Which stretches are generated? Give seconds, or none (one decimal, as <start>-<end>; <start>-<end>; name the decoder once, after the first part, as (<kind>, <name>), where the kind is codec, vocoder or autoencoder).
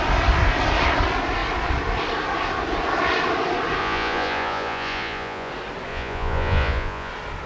3.8-5.5 (vocoder, Vocos); 5.9-7.1